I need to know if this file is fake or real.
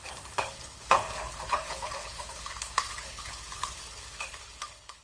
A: fake